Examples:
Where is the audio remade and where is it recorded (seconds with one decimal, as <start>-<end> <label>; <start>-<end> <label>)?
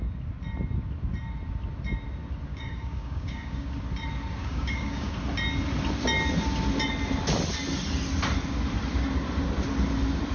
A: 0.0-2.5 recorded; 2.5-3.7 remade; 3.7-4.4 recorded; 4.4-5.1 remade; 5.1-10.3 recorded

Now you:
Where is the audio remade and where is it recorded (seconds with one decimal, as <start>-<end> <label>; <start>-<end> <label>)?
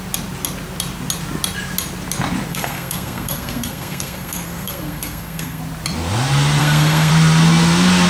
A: 0.0-2.5 recorded; 2.5-5.6 remade; 5.6-6.6 recorded; 6.6-7.1 remade; 7.1-8.1 recorded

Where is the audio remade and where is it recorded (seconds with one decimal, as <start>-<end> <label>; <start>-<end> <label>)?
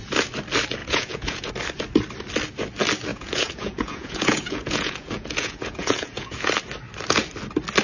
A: 0.0-0.8 recorded; 0.8-1.5 remade; 1.5-3.1 recorded; 3.1-6.5 remade; 6.5-7.8 recorded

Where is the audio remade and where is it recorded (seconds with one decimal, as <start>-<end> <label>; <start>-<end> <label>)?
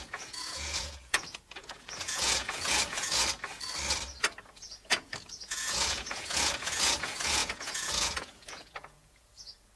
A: 0.0-3.2 remade; 3.2-4.5 recorded; 4.5-9.8 remade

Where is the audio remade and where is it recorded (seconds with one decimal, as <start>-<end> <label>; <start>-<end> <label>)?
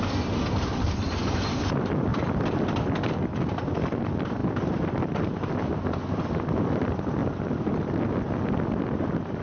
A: 0.0-7.2 remade; 7.2-9.4 recorded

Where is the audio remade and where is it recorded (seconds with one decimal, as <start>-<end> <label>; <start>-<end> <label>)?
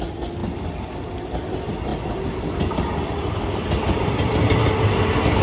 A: 0.0-5.4 recorded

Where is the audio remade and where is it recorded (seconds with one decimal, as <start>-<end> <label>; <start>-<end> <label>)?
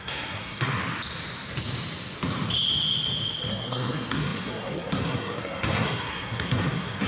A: 0.0-0.8 remade; 0.8-3.5 recorded; 3.5-7.1 remade